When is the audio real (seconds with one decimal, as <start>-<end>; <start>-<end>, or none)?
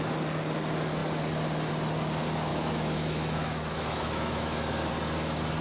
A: 0.0-2.5; 4.9-5.6